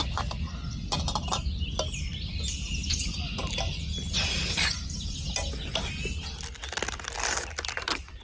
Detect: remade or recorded recorded